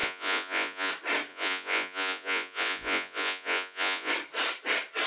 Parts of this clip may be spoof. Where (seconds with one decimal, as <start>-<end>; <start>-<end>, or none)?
0.0-0.9; 1.3-4.1

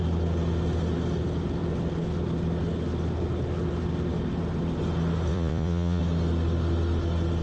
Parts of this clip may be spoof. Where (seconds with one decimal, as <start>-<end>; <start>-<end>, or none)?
5.3-6.0

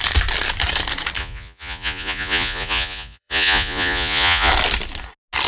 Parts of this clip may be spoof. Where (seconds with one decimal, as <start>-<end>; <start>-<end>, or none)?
1.2-4.5

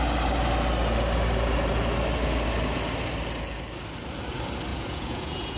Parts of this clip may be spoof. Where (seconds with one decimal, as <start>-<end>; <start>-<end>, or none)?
4.7-5.6

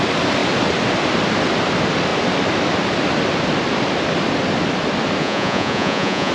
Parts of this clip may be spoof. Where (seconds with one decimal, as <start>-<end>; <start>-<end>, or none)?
5.2-6.3

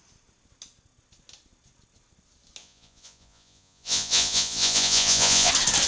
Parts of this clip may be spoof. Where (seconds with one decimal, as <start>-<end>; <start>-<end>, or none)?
2.6-5.5